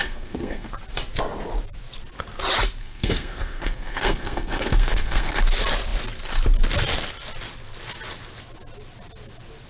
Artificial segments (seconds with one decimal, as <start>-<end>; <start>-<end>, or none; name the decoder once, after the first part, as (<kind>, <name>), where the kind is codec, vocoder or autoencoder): 0.0-0.7 (codec, SNAC); 2.8-5.4